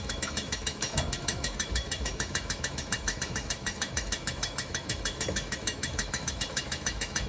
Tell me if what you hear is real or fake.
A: fake